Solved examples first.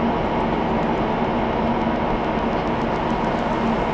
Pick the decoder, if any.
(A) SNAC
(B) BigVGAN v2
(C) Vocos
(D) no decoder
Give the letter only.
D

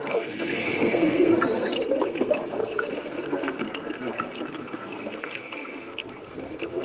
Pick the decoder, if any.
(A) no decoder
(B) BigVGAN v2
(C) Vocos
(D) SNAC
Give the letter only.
D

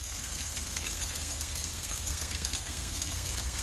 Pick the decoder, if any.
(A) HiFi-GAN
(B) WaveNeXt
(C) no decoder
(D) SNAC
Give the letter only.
D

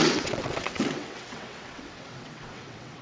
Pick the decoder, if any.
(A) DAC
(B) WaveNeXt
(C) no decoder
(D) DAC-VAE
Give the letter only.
B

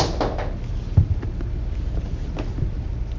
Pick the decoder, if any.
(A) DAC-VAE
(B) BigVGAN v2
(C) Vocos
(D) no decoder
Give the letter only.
D